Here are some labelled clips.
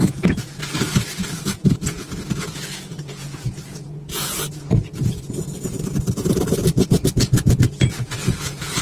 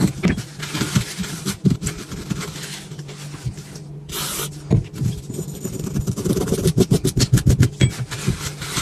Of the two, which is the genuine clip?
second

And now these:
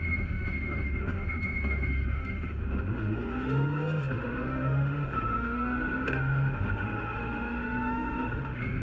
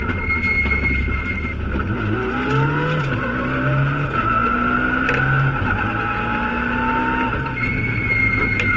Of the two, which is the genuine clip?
second